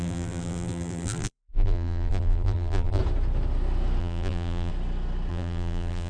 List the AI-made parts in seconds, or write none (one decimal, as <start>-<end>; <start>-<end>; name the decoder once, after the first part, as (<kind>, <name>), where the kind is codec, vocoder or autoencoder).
0.0-3.0 (vocoder, BigVGAN v2); 4.0-4.7; 5.3-6.1